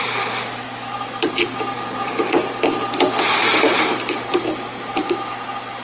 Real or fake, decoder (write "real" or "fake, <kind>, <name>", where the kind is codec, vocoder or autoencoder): real